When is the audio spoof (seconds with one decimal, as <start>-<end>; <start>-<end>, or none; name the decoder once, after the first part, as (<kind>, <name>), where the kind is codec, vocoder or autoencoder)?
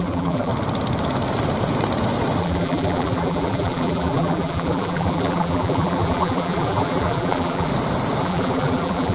0.0-0.5 (vocoder, BigVGAN v2); 2.4-7.7; 8.2-9.1